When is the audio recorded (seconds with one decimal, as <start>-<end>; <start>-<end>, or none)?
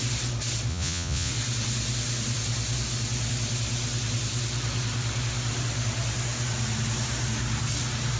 0.0-0.7; 1.3-8.2